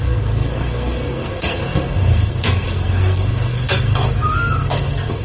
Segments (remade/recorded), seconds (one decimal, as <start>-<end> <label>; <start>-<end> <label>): 0.0-5.2 remade